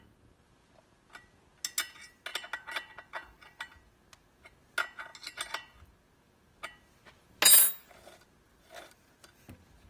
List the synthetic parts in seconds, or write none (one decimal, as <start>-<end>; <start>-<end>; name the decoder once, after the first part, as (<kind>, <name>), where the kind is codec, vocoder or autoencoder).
none